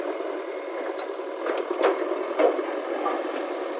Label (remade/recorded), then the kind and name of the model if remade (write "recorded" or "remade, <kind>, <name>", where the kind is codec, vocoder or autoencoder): recorded